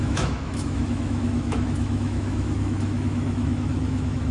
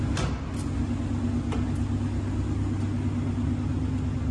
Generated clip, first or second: first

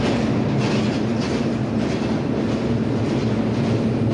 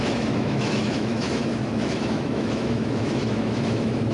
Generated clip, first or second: second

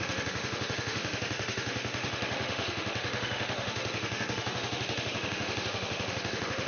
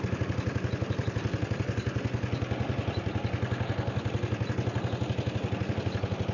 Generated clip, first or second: first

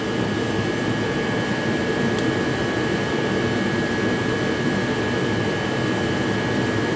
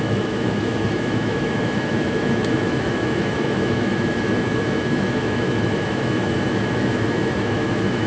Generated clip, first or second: second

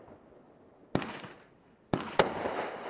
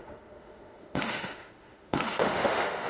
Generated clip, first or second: second